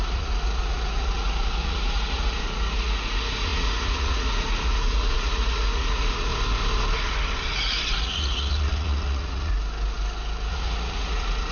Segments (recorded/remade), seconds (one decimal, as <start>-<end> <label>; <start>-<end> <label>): 0.0-6.3 remade; 6.3-8.0 recorded; 8.0-9.5 remade; 9.5-10.5 recorded; 10.5-11.5 remade